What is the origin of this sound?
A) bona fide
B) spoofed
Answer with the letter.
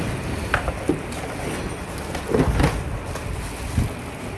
A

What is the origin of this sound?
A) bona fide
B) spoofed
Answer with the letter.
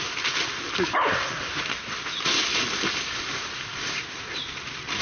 A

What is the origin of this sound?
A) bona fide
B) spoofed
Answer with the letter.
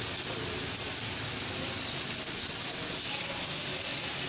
A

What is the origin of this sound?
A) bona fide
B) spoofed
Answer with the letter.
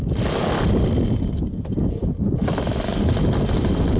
A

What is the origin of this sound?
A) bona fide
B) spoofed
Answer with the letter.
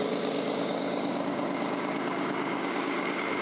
B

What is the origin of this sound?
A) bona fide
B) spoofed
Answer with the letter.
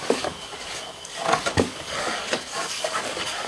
B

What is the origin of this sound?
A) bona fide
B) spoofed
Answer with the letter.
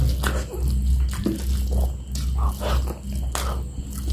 A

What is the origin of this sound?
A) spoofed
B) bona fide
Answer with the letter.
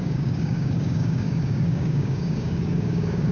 A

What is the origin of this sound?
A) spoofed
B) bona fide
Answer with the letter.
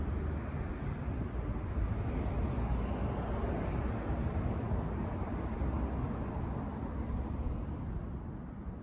B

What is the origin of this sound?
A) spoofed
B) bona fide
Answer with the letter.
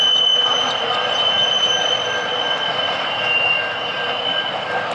B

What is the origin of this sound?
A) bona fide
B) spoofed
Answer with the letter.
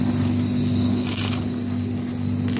A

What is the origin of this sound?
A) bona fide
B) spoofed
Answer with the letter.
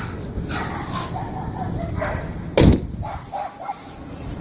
A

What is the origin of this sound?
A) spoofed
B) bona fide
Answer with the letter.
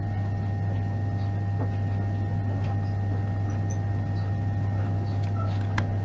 B